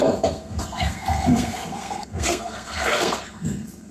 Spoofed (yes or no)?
yes